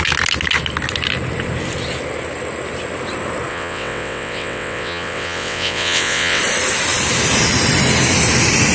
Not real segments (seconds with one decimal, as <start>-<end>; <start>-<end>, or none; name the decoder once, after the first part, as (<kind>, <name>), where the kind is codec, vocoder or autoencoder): 3.5-6.4 (vocoder, WaveNeXt)